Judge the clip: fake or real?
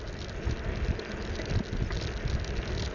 real